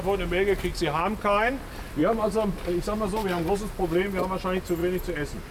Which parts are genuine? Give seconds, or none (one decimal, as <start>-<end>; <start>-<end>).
0.0-5.5